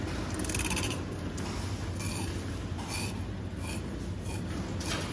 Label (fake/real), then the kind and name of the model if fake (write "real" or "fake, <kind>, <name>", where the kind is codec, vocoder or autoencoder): real